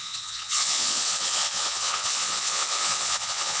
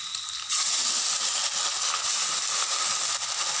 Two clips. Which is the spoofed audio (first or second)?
first